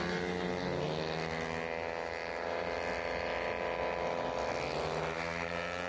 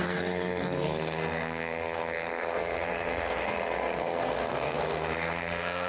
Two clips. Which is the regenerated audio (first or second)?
second